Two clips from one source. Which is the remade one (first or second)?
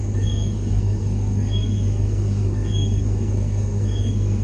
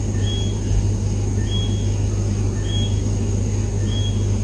first